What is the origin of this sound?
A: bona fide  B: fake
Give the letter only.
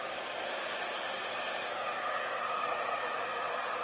A